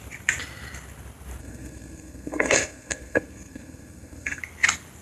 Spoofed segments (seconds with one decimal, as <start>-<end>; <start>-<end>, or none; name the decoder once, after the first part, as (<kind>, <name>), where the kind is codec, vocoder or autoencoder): 1.4-4.4 (codec, SNAC)